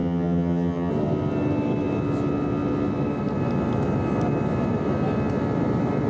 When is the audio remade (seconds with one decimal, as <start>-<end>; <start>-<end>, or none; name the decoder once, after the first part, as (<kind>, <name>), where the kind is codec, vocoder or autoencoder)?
0.0-0.9 (vocoder, HiFi-GAN)